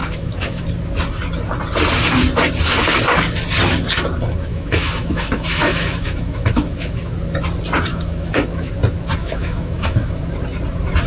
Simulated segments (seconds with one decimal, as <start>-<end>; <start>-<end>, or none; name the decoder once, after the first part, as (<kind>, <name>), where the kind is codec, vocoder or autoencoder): 0.0-0.6 (autoencoder, DAC-VAE); 4.5-7.1; 7.9-8.7; 9.2-10.2

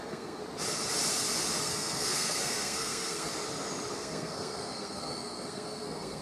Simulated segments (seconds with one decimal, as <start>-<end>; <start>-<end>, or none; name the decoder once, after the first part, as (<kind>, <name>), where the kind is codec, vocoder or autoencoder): 0.0-0.4 (codec, SNAC); 1.6-3.3; 3.9-6.2

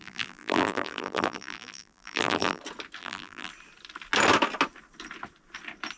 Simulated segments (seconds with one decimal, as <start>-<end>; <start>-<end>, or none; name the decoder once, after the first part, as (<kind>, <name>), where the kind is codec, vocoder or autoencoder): 0.0-2.6 (vocoder, BigVGAN v2); 3.0-3.5

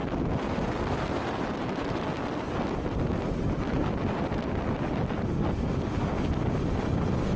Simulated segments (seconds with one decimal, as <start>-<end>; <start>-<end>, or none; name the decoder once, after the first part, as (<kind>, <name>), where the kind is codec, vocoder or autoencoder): none

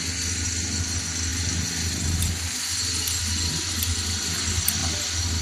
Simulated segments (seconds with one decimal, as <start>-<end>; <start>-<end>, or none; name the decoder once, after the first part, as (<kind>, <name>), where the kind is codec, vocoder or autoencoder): none

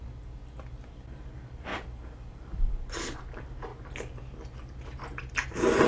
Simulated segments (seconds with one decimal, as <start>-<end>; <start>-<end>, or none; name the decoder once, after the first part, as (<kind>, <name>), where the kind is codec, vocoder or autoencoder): 1.7-2.8 (vocoder, BigVGAN v2)